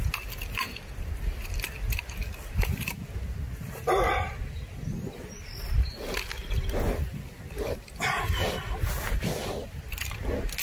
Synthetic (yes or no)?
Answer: no